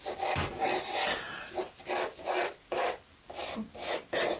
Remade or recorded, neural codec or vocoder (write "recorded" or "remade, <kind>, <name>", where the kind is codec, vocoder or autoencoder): recorded